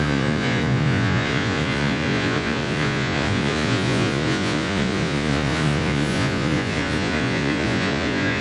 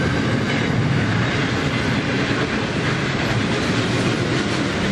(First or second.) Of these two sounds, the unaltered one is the second